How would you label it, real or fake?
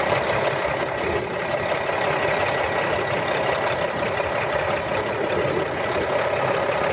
real